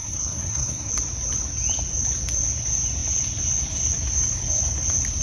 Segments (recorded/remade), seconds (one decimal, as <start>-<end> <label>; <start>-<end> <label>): 0.0-0.9 remade; 0.9-5.2 recorded

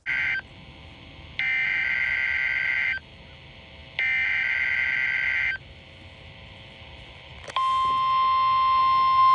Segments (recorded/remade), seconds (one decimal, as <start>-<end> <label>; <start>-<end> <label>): 0.0-9.3 recorded

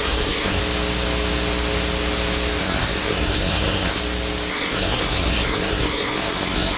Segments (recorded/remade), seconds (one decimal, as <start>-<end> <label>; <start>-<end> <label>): 0.0-0.6 remade; 0.6-2.6 recorded; 2.6-4.0 remade; 4.0-4.5 recorded; 4.5-6.8 remade

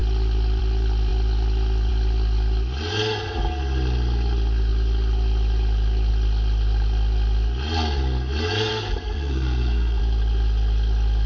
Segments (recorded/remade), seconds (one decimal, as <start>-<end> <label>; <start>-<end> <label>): 0.0-8.7 recorded; 8.7-10.0 remade; 10.0-11.3 recorded

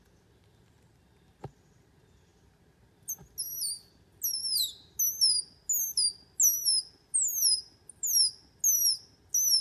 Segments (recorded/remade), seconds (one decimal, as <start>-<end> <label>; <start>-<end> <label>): 0.0-9.6 recorded

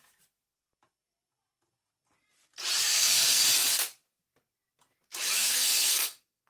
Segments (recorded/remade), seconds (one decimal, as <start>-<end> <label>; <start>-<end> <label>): 0.0-2.9 recorded; 2.9-3.4 remade; 3.4-5.4 recorded; 5.4-6.5 remade

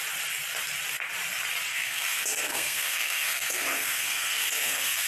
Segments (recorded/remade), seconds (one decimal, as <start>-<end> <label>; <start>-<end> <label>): 0.0-1.7 recorded; 1.7-5.1 remade